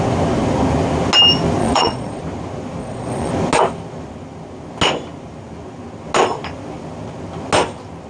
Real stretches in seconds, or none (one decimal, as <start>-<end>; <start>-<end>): 0.0-1.6; 2.2-2.8; 3.3-8.1